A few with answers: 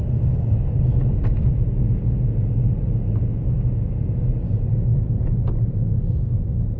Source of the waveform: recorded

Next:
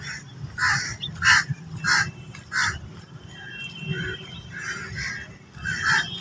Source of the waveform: recorded